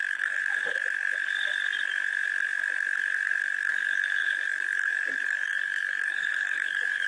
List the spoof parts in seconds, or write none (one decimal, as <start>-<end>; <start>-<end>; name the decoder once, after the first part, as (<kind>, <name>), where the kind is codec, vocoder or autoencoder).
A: 0.0-0.4 (codec, DAC); 3.7-7.1